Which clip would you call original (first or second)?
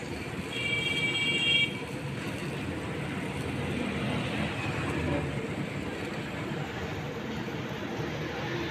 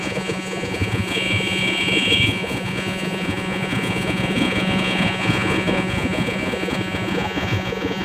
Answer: first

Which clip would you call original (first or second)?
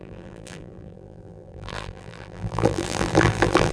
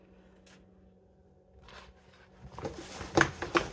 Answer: second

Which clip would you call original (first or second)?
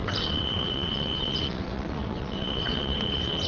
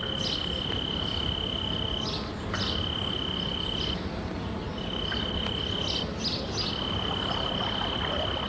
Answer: second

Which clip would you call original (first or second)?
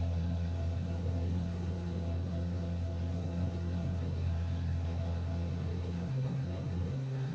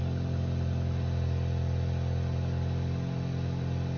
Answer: second